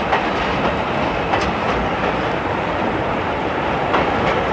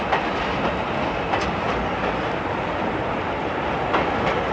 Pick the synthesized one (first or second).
first